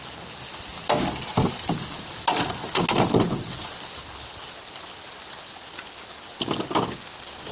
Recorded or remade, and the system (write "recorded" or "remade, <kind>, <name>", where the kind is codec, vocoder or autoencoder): recorded